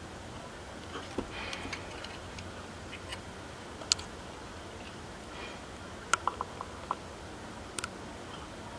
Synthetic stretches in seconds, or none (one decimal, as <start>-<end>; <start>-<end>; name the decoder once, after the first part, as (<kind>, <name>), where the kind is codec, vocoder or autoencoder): none